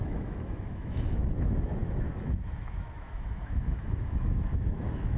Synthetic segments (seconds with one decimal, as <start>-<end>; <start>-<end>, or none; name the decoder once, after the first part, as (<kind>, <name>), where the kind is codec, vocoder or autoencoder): 0.0-5.2 (autoencoder, DAC-VAE)